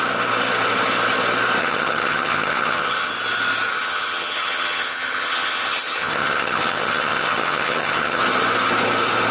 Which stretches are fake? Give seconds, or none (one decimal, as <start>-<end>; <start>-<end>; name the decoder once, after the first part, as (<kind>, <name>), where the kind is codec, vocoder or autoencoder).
1.6-3.1 (vocoder, HiFi-GAN); 3.7-8.2